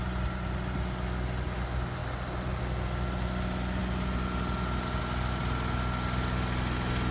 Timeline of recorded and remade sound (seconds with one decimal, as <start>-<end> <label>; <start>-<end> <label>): 0.0-7.1 recorded